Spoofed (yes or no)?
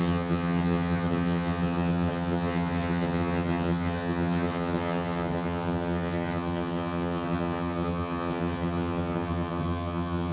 yes